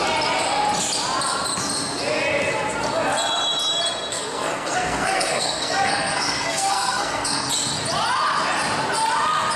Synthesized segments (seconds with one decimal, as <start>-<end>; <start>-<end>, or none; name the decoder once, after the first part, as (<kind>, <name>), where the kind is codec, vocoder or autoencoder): 4.1-7.5 (codec, SNAC)